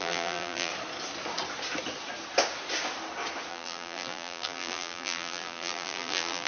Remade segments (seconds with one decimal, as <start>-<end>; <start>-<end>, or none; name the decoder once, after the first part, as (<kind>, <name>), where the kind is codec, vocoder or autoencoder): 0.0-0.7 (vocoder, BigVGAN v2); 3.5-6.5

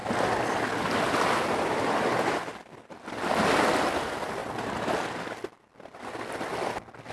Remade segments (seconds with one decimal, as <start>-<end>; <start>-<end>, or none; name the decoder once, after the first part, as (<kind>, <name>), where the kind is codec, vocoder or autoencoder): none

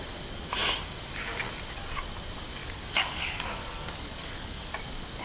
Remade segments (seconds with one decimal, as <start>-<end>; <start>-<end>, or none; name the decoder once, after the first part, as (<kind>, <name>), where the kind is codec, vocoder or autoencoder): 2.6-4.7 (codec, DAC)

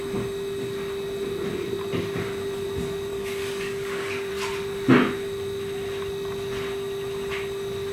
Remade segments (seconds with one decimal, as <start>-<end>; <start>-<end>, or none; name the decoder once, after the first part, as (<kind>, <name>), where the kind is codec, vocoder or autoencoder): 3.1-4.3 (codec, DAC)

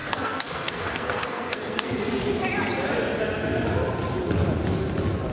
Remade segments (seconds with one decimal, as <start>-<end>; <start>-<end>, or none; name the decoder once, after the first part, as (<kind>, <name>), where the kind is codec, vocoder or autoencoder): 0.0-2.0 (codec, SNAC)

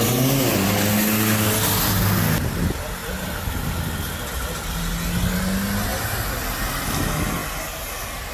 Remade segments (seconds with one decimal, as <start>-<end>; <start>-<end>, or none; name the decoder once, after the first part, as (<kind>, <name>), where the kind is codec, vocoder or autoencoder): none

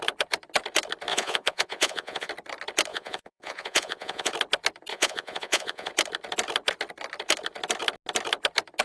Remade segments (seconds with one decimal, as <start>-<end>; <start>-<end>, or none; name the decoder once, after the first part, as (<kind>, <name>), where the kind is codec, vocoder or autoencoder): 1.1-2.3 (vocoder, Vocos); 2.9-4.3; 4.9-5.9